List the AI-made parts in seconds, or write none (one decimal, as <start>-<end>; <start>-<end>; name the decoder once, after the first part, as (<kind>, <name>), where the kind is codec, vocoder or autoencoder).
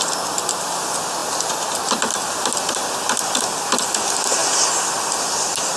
none